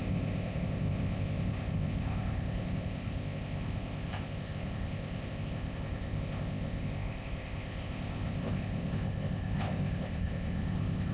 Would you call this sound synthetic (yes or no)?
yes